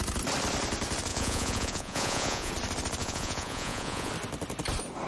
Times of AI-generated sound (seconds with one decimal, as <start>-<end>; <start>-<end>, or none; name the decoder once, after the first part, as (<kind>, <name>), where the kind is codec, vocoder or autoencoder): 1.1-2.5 (vocoder, Vocos); 3.0-4.1